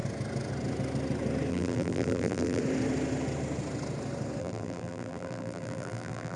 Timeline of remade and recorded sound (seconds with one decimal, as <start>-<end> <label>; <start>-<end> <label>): 0.0-1.5 recorded; 1.5-2.6 remade; 2.6-4.4 recorded; 4.4-6.4 remade